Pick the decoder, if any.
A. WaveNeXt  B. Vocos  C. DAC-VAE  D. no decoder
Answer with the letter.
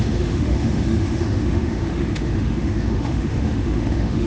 C